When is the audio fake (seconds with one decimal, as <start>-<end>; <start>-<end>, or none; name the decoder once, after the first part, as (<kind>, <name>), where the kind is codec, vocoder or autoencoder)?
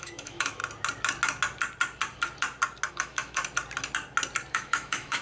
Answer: 0.0-0.6 (autoencoder, DAC-VAE); 2.9-3.4; 4.5-5.2